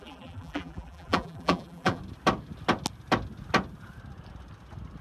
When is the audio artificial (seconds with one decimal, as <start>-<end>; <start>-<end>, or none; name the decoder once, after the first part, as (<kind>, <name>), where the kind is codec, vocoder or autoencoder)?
0.0-2.0 (vocoder, BigVGAN v2)